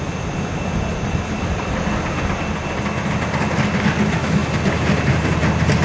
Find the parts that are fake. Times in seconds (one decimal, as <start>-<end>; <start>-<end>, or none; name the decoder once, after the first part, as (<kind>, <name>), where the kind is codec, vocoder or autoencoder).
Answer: none